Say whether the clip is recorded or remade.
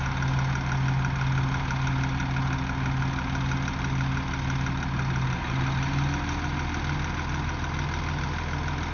recorded